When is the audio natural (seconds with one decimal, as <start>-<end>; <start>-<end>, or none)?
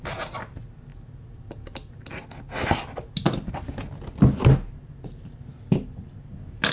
0.0-6.7